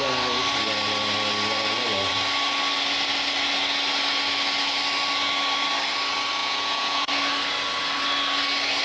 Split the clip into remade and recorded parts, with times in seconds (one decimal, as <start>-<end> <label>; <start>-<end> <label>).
0.0-6.4 recorded; 6.4-7.1 remade; 7.1-8.8 recorded